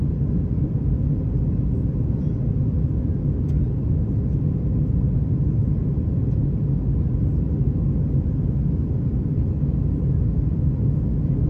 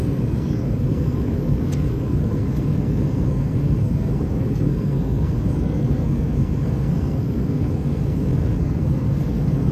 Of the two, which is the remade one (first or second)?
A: second